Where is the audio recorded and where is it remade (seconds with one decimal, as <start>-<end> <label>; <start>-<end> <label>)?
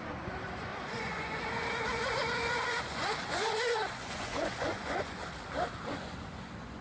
0.0-5.2 remade; 5.2-5.9 recorded; 5.9-6.8 remade